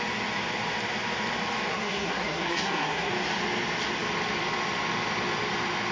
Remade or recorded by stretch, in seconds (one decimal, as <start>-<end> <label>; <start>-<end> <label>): 0.0-1.7 recorded; 1.7-3.1 remade; 3.1-5.9 recorded